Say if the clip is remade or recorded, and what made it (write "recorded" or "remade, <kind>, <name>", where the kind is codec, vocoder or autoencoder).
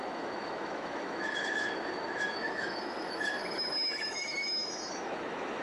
remade, autoencoder, DAC-VAE